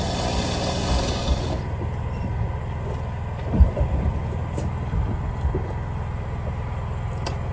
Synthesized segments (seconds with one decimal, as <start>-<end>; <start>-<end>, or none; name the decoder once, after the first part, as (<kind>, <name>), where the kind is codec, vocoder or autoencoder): none